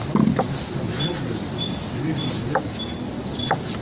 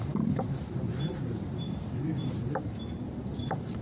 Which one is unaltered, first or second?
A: first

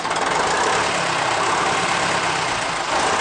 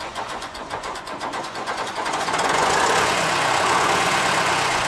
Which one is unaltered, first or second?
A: first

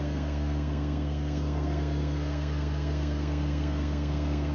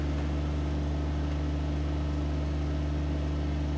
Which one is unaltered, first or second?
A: second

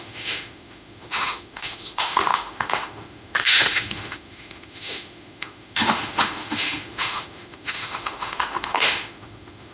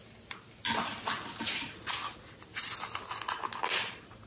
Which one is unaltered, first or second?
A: second